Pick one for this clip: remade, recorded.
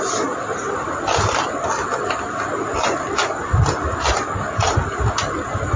recorded